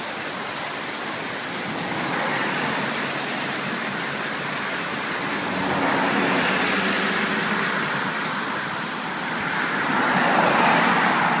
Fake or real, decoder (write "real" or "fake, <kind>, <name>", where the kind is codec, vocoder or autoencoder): real